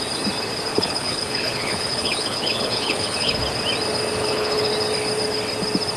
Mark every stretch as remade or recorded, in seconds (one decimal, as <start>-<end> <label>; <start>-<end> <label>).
0.0-0.7 recorded; 0.7-3.4 remade; 3.4-4.2 recorded; 4.2-4.7 remade; 4.7-6.0 recorded